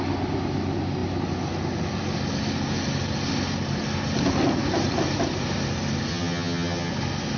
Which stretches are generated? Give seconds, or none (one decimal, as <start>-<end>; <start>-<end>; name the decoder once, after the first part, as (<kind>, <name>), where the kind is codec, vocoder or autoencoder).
6.1-6.9 (vocoder, HiFi-GAN)